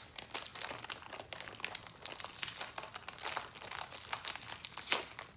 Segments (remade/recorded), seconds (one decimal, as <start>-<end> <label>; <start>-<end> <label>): 0.0-5.4 recorded